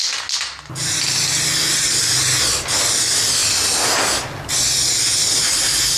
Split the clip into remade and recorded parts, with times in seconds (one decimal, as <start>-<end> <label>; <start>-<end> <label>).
0.0-6.0 recorded